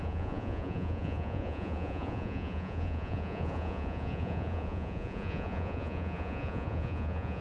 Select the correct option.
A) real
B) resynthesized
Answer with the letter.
B